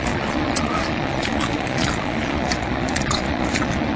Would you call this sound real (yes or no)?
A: no